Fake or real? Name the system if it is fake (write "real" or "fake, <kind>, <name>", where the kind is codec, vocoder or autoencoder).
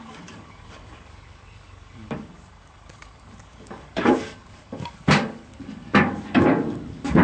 fake, codec, DAC